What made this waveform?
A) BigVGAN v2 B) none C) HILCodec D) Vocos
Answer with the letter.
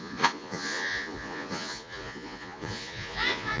D